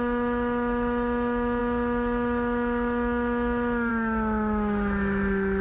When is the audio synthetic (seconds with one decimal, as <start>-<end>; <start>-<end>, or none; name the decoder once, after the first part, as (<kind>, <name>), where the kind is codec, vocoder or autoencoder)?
0.0-5.6 (autoencoder, DAC-VAE)